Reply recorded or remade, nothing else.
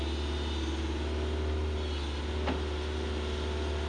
recorded